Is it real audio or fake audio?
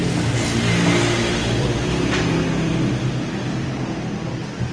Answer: real